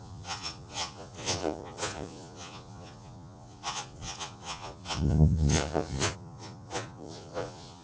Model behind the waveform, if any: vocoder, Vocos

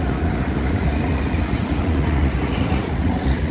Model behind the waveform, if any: vocoder, Vocos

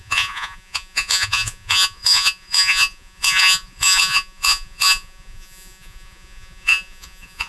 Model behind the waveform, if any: vocoder, Vocos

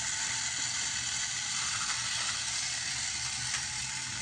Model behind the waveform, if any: none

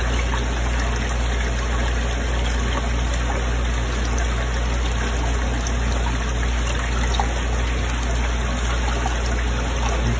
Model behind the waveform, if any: none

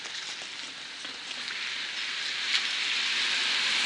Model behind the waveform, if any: none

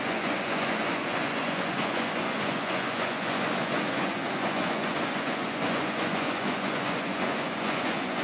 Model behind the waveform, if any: vocoder, Vocos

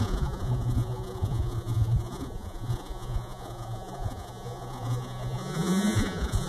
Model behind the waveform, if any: vocoder, Vocos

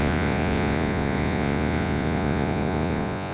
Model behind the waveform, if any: vocoder, Vocos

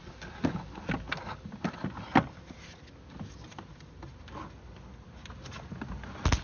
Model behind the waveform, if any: none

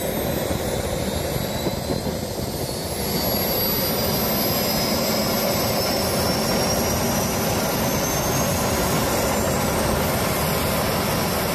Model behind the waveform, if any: none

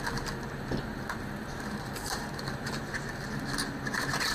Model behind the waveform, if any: none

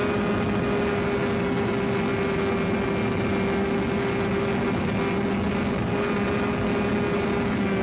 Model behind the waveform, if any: none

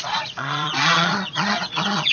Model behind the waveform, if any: vocoder, Vocos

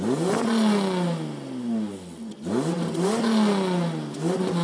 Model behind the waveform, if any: none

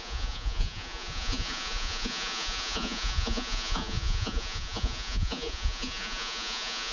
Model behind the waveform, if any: vocoder, Vocos